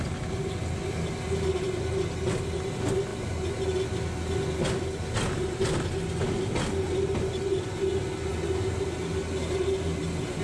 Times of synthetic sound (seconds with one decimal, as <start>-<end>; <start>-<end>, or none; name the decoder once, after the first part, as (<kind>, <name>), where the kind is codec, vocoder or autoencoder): none